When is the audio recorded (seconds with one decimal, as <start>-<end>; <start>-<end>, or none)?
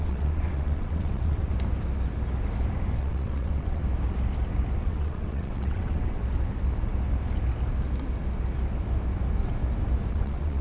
1.5-3.0; 3.8-4.8; 6.2-10.1